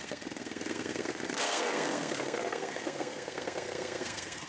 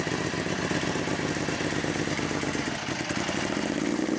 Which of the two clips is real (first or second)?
second